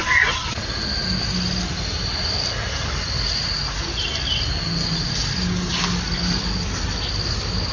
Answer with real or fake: real